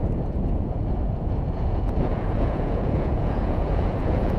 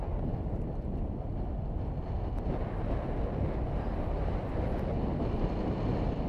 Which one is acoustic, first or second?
second